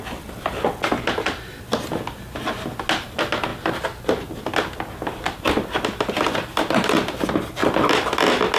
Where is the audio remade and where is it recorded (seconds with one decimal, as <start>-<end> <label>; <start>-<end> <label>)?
0.0-8.6 recorded